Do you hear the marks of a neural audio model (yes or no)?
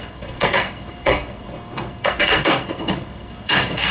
yes